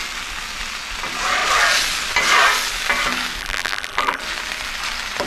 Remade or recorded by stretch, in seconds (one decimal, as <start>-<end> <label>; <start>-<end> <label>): 0.0-3.4 recorded; 3.4-4.2 remade; 4.2-5.3 recorded